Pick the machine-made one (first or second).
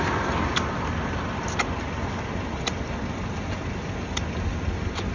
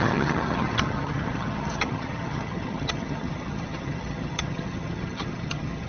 second